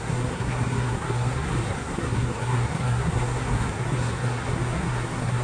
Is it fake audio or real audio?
fake